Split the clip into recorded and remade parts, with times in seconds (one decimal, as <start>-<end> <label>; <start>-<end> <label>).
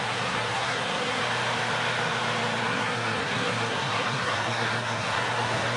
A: 0.0-1.2 remade; 1.2-2.6 recorded; 2.6-5.8 remade